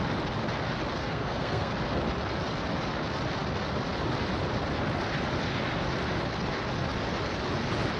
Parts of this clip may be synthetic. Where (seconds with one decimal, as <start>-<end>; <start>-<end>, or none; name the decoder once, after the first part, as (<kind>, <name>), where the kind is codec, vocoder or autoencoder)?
1.0-1.7 (codec, SNAC)